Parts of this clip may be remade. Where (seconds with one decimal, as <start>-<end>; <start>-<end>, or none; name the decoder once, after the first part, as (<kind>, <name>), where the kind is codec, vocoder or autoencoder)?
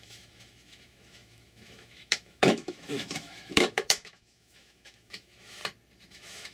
0.0-5.6 (autoencoder, DAC-VAE); 6.1-6.5